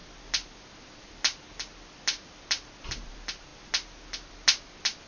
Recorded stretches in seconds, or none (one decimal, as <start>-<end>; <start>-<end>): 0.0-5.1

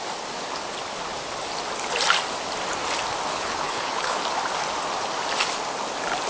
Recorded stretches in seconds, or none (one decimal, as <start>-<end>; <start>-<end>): 0.0-3.3; 4.2-6.3

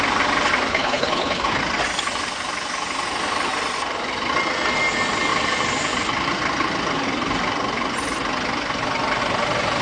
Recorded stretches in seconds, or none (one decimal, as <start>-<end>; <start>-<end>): 0.0-0.7; 1.6-9.8

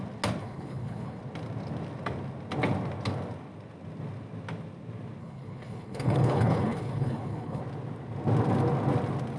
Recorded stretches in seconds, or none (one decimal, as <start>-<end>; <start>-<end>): 0.0-0.4; 1.2-5.2; 7.6-9.4

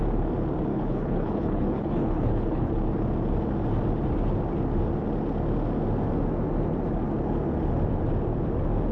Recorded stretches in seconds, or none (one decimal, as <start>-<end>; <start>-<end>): 0.0-0.7; 2.7-8.9

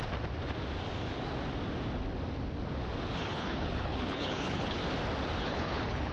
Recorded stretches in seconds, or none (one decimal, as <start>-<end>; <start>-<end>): 0.0-3.2; 4.8-5.4